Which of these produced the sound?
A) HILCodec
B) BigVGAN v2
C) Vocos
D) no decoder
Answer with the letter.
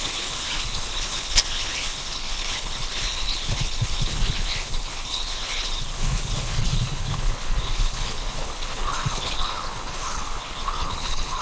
A